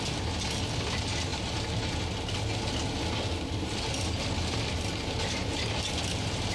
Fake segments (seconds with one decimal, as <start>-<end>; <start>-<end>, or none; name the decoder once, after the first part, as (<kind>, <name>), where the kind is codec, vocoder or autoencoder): none